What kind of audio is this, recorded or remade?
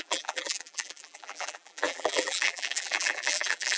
remade